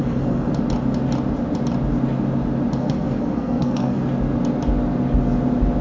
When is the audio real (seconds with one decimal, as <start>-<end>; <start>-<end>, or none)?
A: 0.5-2.8; 4.0-5.8